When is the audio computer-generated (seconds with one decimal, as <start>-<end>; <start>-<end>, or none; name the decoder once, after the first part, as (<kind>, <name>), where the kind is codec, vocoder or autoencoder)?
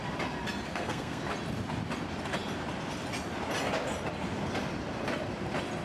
0.7-1.2 (codec, SNAC)